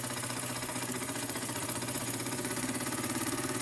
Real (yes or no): no